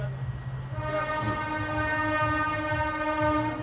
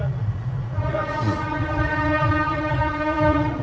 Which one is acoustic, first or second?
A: first